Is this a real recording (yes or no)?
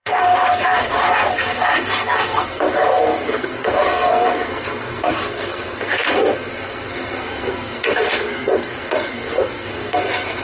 no